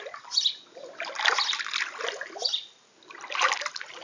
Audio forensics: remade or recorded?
recorded